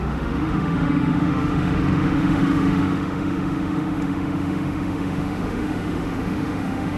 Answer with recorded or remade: remade